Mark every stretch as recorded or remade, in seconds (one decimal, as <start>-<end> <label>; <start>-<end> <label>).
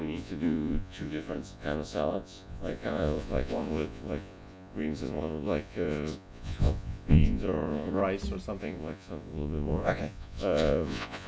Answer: 0.0-8.0 remade; 8.0-8.6 recorded; 8.6-11.3 remade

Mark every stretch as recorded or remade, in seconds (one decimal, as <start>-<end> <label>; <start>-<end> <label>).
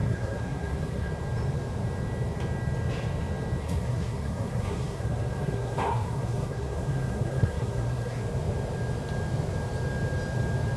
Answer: 0.0-1.1 remade; 1.1-3.6 recorded; 3.6-8.2 remade; 8.2-10.8 recorded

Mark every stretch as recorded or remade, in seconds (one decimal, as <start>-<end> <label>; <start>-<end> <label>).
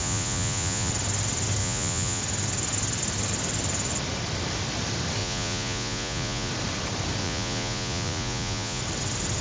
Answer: 0.0-0.9 remade; 0.9-1.6 recorded; 1.6-2.2 remade; 2.2-5.2 recorded; 5.2-6.5 remade; 6.5-7.2 recorded; 7.2-8.8 remade; 8.8-9.4 recorded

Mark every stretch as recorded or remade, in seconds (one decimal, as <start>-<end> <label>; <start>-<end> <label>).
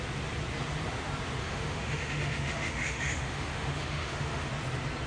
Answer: 0.0-1.4 recorded; 1.4-4.5 remade; 4.5-5.1 recorded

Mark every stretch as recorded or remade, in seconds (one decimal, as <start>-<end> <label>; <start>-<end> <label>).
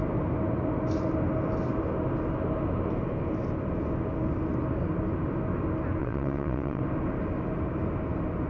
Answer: 0.0-6.0 recorded; 6.0-6.8 remade; 6.8-8.5 recorded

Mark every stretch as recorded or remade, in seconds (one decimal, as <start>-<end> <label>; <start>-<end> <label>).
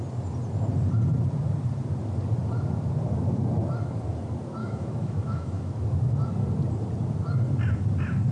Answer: 0.0-4.6 recorded; 4.6-5.7 remade; 5.7-8.3 recorded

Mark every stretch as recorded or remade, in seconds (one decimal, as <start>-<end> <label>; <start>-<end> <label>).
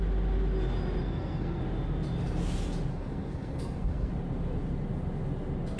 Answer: 0.0-1.0 recorded; 1.0-1.6 remade; 1.6-2.9 recorded; 2.9-4.1 remade; 4.1-5.8 recorded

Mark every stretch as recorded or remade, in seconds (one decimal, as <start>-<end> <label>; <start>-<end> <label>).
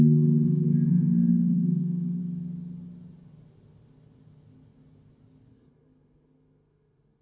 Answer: 0.0-2.2 remade; 2.2-5.5 recorded; 5.5-7.2 remade